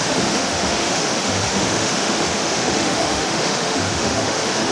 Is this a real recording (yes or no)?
no